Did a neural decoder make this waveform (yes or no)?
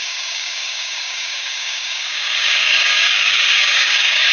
yes